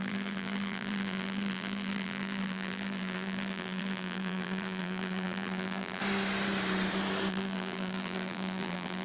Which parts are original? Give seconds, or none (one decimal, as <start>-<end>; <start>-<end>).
6.0-7.3